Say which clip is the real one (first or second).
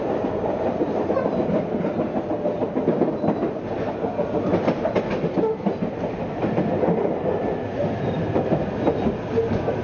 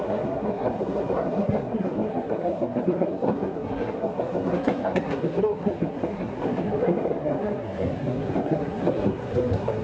first